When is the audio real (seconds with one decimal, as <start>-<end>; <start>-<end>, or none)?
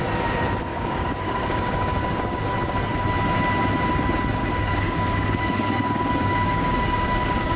0.0-0.7; 2.4-4.4